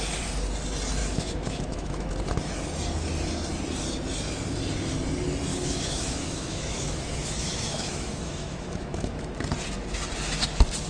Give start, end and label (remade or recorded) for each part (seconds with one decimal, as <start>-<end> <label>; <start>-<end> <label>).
0.0-1.0 recorded; 1.0-2.1 remade; 2.1-5.5 recorded; 5.5-9.3 remade; 9.3-10.9 recorded